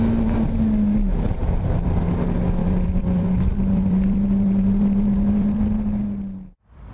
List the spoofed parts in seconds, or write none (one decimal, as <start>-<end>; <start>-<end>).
1.4-2.0; 2.6-6.0